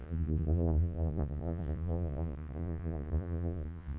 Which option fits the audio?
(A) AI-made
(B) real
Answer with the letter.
A